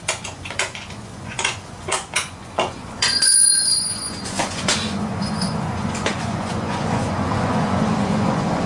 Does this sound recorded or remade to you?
remade